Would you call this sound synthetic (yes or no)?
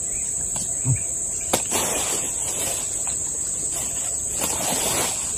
no